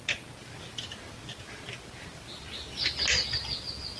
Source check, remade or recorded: recorded